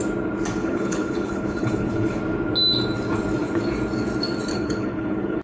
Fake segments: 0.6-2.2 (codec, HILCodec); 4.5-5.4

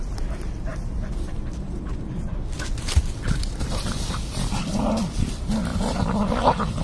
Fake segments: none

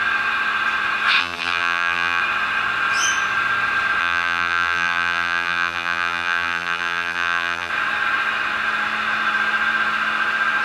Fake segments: 1.2-2.2 (vocoder, BigVGAN v2); 4.0-7.7

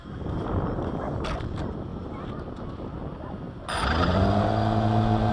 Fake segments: none